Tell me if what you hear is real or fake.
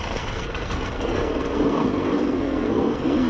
fake